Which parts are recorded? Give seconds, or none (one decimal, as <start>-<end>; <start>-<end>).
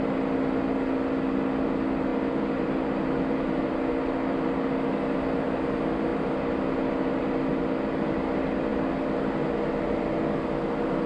0.0-11.1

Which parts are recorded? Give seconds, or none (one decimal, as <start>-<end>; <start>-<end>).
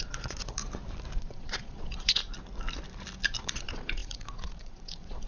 0.6-1.2; 2.2-3.4